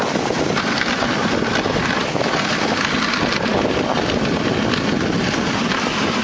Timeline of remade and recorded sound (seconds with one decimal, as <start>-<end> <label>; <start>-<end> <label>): 0.0-6.2 recorded